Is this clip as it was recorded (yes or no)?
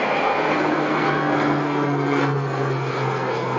no